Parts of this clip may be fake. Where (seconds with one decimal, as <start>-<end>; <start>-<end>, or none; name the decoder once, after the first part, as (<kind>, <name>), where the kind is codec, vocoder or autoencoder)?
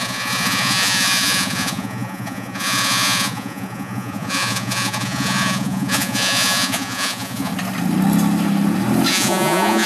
0.0-7.5 (vocoder, Vocos); 9.1-9.9